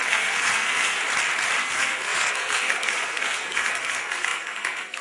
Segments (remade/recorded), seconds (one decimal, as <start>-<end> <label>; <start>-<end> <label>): 0.0-1.0 remade; 1.0-1.6 recorded; 1.6-5.0 remade